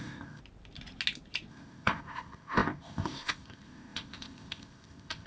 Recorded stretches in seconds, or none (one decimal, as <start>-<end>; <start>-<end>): 0.4-1.5